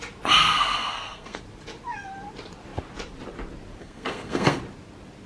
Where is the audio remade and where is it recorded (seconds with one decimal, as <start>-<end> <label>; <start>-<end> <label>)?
0.0-0.4 recorded; 0.4-1.4 remade; 1.4-3.8 recorded; 3.8-4.6 remade; 4.6-5.3 recorded